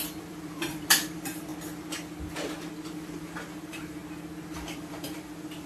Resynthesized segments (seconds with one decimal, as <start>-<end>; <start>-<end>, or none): 0.0-1.5; 2.9-4.0; 4.5-5.7